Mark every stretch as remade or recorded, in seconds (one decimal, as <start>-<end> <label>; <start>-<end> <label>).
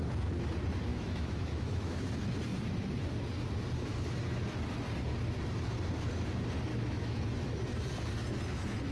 0.0-0.9 recorded; 0.9-2.1 remade; 2.1-6.7 recorded; 6.7-7.2 remade; 7.2-8.9 recorded